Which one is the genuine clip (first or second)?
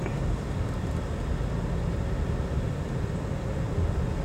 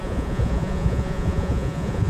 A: first